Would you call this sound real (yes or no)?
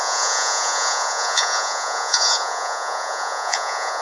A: no